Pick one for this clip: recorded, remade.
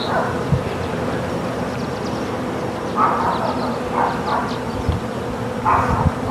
recorded